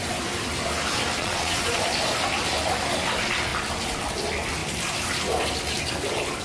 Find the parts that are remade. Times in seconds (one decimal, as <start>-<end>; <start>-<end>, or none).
1.2-1.8